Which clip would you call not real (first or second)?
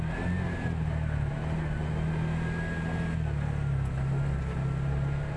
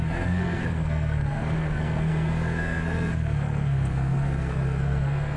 second